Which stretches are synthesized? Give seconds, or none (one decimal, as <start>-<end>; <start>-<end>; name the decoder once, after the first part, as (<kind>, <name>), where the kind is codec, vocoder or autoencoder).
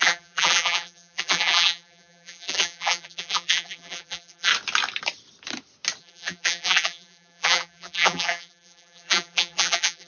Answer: 0.0-4.5 (vocoder, BigVGAN v2); 6.0-10.1